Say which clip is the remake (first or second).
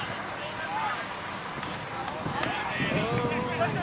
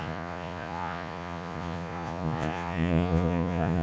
second